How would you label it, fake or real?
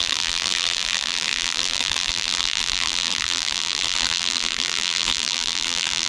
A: fake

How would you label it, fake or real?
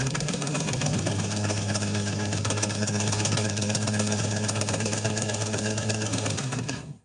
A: fake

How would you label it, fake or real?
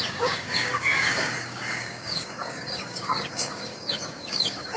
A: fake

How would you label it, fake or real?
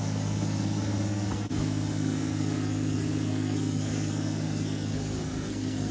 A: fake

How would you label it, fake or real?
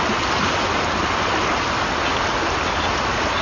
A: real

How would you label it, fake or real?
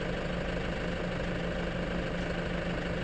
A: real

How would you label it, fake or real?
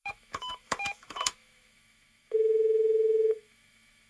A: fake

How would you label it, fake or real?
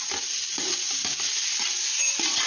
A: real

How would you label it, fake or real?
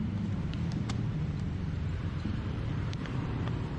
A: fake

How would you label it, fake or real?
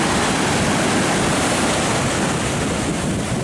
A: real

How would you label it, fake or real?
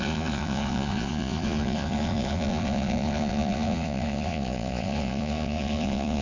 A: fake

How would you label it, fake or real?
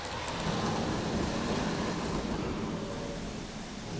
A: real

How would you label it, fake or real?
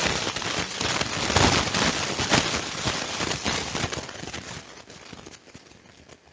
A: real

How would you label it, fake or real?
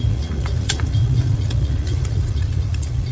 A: fake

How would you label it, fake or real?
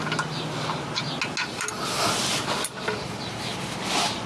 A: real